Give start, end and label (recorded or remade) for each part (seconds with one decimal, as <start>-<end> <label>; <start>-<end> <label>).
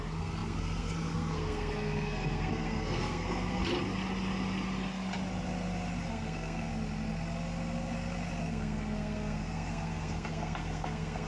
0.0-3.6 remade; 3.6-6.1 recorded; 6.1-6.7 remade; 6.7-8.4 recorded; 8.4-11.3 remade